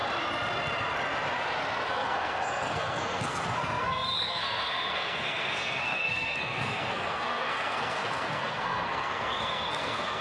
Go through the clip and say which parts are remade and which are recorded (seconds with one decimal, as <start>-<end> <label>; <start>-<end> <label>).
0.0-1.9 recorded; 1.9-10.2 remade